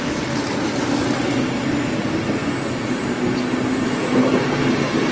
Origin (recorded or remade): recorded